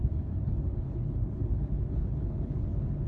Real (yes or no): no